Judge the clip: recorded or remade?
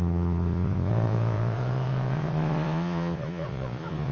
remade